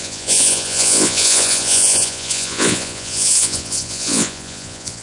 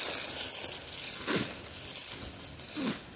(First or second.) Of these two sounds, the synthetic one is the first